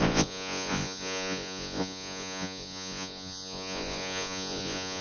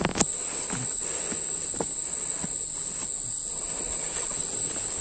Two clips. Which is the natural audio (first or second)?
second